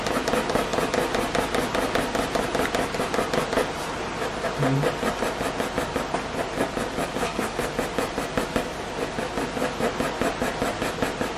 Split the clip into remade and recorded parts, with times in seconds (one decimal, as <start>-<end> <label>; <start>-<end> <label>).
0.0-7.2 recorded; 7.2-7.7 remade; 7.7-11.4 recorded